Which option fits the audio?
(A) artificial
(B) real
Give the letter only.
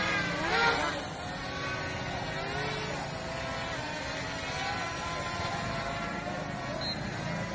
B